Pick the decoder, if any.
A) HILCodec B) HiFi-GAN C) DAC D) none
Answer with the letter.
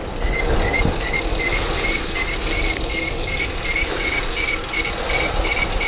D